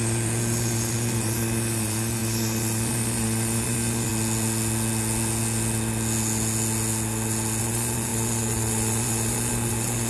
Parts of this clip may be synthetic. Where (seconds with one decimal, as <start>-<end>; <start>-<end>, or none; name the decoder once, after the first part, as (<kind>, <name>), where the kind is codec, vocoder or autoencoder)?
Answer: 0.0-4.1 (vocoder, Vocos); 7.6-10.1